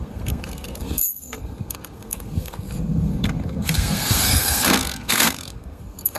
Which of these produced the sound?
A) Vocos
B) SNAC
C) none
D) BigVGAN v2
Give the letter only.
B